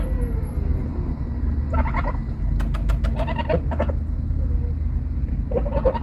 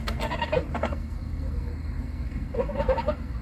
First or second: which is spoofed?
second